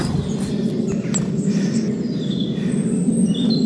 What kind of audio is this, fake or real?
real